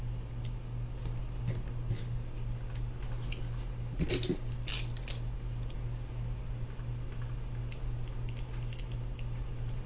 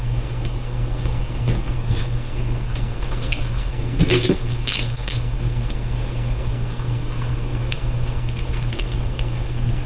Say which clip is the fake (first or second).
second